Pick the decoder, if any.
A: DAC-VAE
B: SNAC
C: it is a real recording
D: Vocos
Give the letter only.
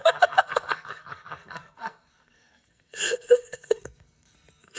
B